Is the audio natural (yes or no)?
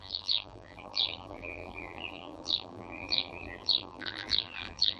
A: no